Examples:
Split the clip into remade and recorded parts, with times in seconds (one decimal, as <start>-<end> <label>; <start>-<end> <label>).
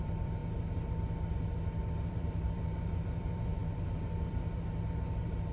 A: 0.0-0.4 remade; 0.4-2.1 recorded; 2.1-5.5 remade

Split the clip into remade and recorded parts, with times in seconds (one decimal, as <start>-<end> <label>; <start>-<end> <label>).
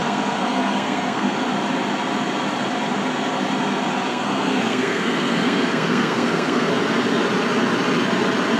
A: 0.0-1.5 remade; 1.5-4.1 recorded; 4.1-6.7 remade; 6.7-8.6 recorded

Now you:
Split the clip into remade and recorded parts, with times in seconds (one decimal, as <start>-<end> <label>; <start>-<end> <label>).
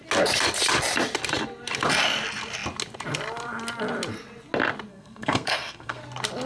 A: 0.0-4.9 recorded; 4.9-6.0 remade; 6.0-6.5 recorded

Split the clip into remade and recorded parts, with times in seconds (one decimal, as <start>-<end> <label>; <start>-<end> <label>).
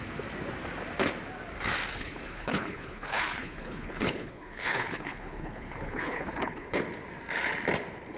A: 0.0-1.9 recorded; 1.9-6.8 remade; 6.8-8.2 recorded